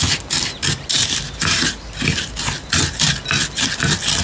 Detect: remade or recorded recorded